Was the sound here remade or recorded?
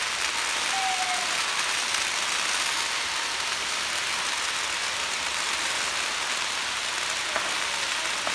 recorded